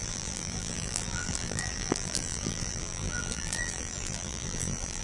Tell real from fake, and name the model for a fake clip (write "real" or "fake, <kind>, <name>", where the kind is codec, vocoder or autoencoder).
fake, vocoder, BigVGAN v2